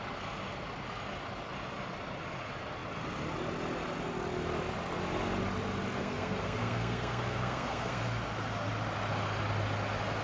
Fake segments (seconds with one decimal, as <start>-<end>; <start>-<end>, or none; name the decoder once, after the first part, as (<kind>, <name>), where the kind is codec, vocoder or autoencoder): 6.0-8.0 (codec, SNAC)